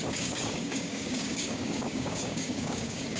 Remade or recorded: remade